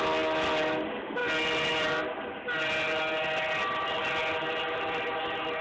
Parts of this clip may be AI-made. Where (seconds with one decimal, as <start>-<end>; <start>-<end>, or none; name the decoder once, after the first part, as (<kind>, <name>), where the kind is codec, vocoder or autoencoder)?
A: none